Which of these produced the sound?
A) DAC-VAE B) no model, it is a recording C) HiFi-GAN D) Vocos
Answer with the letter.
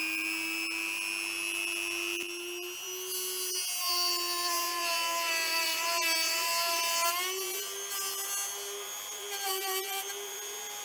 B